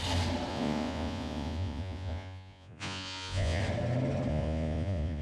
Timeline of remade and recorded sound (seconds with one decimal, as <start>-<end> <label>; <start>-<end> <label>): 0.0-0.5 recorded; 0.5-3.6 remade; 3.6-4.3 recorded; 4.3-5.2 remade